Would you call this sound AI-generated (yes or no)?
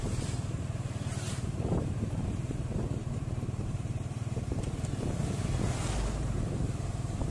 yes